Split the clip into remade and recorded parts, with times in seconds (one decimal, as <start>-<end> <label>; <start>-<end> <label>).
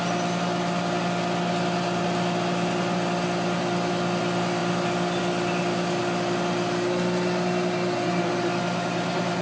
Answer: 0.0-9.4 recorded